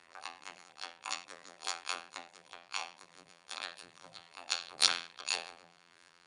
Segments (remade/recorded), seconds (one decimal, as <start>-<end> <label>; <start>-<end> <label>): 0.0-6.3 remade